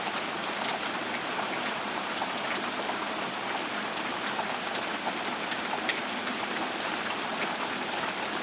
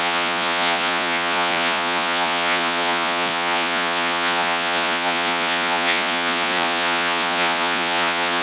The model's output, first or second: second